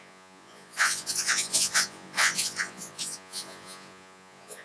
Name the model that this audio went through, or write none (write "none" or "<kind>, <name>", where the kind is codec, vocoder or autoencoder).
vocoder, Vocos